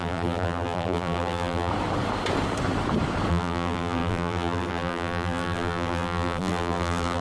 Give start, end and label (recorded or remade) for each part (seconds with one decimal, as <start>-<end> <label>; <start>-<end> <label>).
0.0-1.7 remade; 1.7-3.3 recorded; 3.3-7.2 remade